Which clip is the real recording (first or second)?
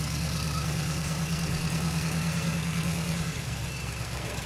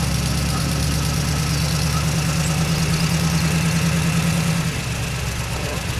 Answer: second